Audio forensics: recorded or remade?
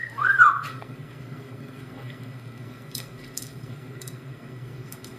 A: remade